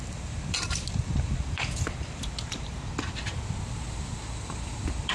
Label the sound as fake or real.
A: fake